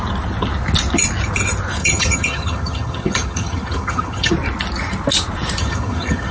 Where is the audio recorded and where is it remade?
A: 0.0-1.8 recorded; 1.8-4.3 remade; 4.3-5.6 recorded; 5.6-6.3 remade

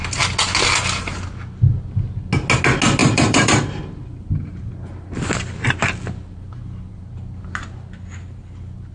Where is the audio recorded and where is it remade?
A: 0.0-3.0 recorded; 3.0-4.7 remade; 4.7-8.9 recorded